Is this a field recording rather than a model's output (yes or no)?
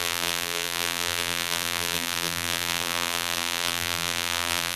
no